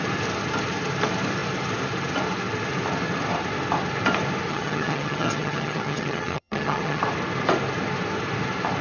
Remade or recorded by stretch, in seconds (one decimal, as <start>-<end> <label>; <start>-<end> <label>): 0.0-4.5 recorded; 4.5-7.0 remade; 7.0-8.8 recorded